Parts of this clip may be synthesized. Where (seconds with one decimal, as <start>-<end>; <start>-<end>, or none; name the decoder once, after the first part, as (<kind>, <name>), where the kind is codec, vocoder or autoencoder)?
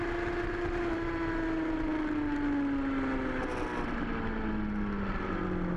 none